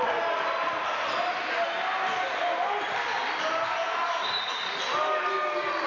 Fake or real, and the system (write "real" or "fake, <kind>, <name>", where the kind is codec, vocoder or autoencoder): real